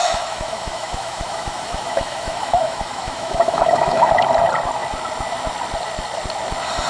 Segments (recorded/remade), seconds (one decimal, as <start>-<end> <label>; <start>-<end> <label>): 0.0-4.1 remade; 4.1-6.9 recorded